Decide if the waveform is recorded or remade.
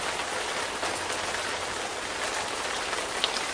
recorded